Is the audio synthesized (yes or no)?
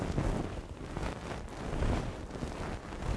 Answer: no